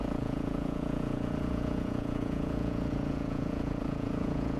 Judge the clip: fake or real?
fake